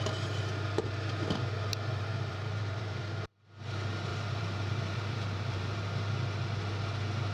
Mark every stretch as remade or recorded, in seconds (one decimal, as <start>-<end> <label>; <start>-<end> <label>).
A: 0.0-1.7 recorded; 1.7-3.0 remade; 3.0-4.1 recorded; 4.1-6.1 remade; 6.1-7.3 recorded

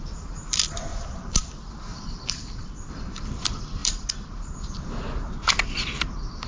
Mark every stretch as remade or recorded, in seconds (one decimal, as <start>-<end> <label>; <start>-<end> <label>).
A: 0.0-0.9 recorded; 0.9-1.5 remade; 1.5-1.9 recorded; 1.9-3.2 remade; 3.2-3.8 recorded; 3.8-4.5 remade; 4.5-6.5 recorded

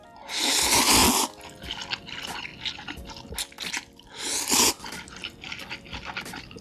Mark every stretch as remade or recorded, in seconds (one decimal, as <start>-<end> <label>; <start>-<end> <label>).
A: 0.0-1.0 remade; 1.0-2.0 recorded; 2.0-2.5 remade; 2.5-4.7 recorded; 4.7-5.2 remade; 5.2-6.6 recorded

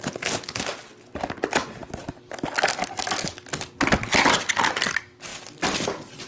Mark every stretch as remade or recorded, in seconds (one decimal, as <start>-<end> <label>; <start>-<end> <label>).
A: 0.0-5.3 recorded; 5.3-6.3 remade

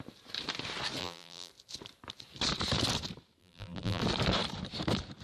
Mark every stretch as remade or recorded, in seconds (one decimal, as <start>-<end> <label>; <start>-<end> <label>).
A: 0.0-1.0 recorded; 1.0-1.5 remade; 1.5-3.4 recorded; 3.4-4.0 remade; 4.0-5.2 recorded

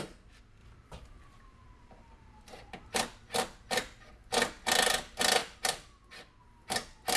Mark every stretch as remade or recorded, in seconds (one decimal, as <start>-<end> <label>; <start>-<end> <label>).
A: 0.0-0.6 recorded; 0.6-3.0 remade; 3.0-7.2 recorded

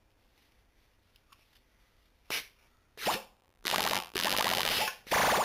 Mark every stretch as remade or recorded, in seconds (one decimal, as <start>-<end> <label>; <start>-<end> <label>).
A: 0.0-3.4 recorded; 3.4-4.7 remade; 4.7-5.4 recorded